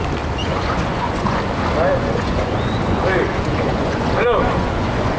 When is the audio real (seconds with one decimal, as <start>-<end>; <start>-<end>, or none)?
0.0-0.4; 1.4-1.9